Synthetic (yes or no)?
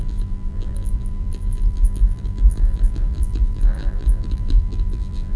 yes